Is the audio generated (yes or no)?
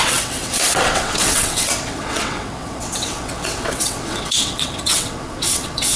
yes